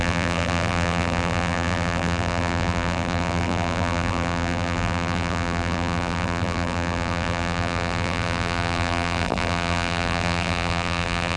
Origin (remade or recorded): remade